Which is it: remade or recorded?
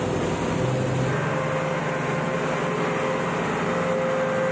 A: recorded